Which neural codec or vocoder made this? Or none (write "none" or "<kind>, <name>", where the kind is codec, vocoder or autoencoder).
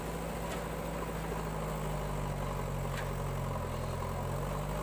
none